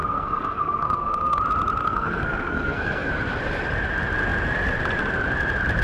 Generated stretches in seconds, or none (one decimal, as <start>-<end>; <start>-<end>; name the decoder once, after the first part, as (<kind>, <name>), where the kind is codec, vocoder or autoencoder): 0.0-1.4 (codec, SNAC); 1.8-3.1